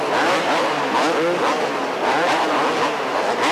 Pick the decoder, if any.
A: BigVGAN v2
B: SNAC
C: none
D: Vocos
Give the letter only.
C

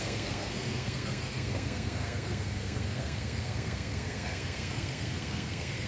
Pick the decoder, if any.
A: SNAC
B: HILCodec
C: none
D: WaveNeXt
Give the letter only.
A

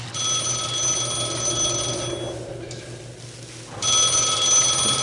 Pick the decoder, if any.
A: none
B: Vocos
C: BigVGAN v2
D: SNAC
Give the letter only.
A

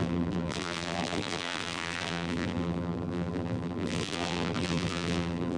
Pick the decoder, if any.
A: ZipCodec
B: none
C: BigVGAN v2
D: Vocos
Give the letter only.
C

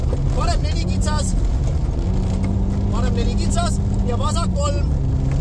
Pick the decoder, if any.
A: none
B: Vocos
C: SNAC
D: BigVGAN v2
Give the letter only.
A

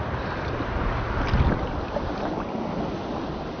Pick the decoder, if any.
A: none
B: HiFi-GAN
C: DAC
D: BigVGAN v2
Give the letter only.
A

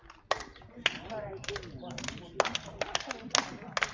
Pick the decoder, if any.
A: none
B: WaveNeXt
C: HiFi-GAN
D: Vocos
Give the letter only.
A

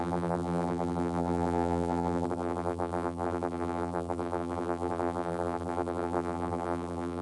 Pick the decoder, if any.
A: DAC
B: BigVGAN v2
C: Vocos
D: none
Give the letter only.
B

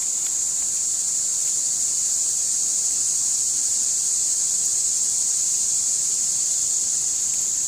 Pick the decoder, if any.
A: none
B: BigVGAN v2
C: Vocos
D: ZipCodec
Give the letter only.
B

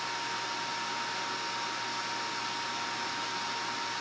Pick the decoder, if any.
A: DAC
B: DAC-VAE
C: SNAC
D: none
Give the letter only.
D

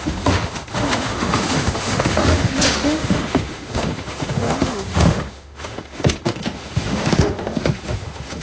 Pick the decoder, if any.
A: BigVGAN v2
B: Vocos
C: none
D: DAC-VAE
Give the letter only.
D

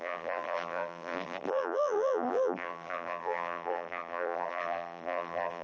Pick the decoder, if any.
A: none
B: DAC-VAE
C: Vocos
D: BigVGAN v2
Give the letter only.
D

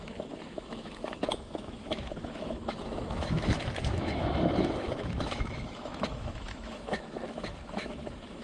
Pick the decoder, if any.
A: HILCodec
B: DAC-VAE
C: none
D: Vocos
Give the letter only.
B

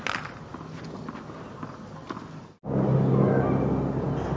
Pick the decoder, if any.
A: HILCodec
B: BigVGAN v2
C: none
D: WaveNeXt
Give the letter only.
C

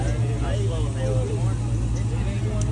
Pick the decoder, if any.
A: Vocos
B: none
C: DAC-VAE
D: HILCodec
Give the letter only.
B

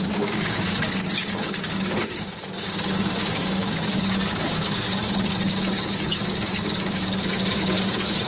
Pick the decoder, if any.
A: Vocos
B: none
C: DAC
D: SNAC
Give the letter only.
C